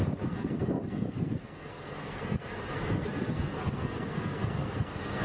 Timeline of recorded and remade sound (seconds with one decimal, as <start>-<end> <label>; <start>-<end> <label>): 0.0-5.2 remade